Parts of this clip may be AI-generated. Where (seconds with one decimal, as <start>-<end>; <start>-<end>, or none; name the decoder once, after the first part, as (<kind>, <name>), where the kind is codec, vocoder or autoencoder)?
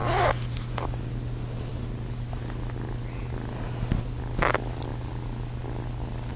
none